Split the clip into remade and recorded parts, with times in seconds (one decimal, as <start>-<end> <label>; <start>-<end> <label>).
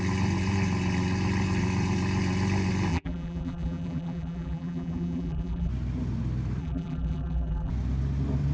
0.0-2.9 recorded; 2.9-5.7 remade; 5.7-6.6 recorded; 6.6-7.7 remade; 7.7-8.5 recorded